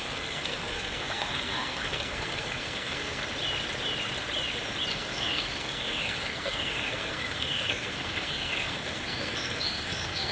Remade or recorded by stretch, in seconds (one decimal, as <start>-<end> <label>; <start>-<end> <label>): 0.0-3.2 remade; 3.2-4.9 recorded; 4.9-10.3 remade